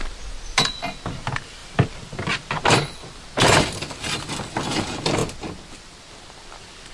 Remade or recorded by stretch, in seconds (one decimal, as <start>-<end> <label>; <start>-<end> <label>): 0.0-6.9 recorded